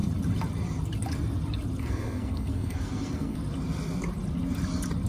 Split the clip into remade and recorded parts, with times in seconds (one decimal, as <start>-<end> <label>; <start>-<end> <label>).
0.0-1.8 recorded; 1.8-3.4 remade; 3.4-5.1 recorded